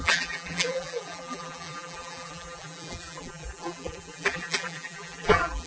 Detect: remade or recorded remade